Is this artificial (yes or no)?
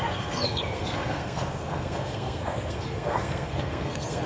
yes